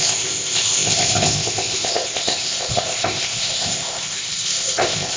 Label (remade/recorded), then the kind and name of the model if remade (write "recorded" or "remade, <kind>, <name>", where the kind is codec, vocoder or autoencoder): remade, codec, ZipCodec